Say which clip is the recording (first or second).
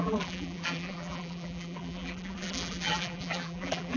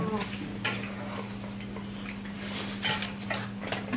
second